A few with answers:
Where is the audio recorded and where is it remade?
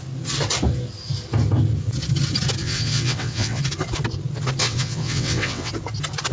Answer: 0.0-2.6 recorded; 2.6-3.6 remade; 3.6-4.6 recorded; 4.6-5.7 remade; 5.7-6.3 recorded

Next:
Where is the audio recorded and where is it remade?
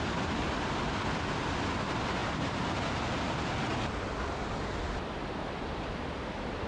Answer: 0.0-2.2 remade; 2.2-3.2 recorded; 3.2-3.7 remade; 3.7-5.1 recorded; 5.1-6.7 remade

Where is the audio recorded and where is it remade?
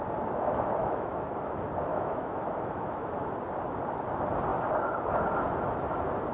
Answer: 0.0-0.8 recorded; 0.8-1.5 remade; 1.5-1.9 recorded; 1.9-3.3 remade; 3.3-6.3 recorded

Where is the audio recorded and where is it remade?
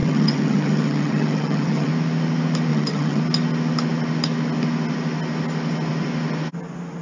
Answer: 0.0-1.9 remade; 1.9-2.7 recorded; 2.7-3.2 remade; 3.2-7.0 recorded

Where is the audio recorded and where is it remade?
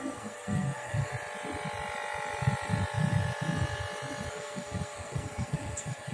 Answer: 0.0-1.1 remade; 1.1-4.3 recorded; 4.3-6.1 remade